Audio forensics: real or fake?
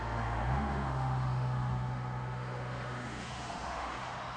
fake